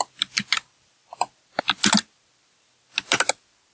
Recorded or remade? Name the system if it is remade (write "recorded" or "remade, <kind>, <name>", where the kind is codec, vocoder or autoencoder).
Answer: recorded